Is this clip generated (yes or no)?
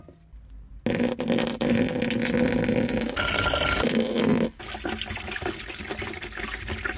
no